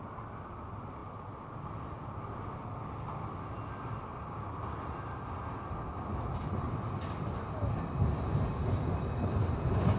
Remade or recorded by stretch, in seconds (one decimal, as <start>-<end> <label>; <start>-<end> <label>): 0.0-10.0 recorded